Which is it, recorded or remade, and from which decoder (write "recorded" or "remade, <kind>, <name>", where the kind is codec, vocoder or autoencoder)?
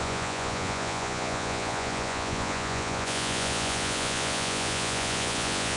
remade, vocoder, Vocos